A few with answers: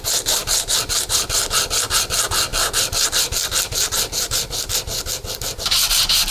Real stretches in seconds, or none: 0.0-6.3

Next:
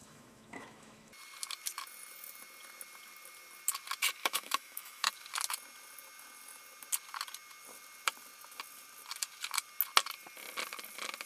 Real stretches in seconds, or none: 1.1-4.2; 5.1-11.3